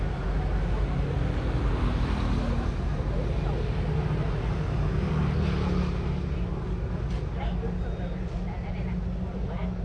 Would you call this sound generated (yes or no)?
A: no